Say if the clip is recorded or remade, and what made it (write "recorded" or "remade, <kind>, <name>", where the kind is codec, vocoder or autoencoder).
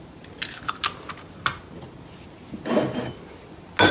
recorded